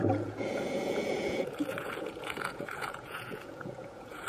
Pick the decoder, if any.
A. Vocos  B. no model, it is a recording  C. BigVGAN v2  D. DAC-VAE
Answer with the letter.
A